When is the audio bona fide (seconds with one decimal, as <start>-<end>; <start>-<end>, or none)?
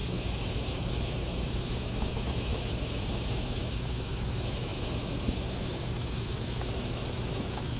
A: none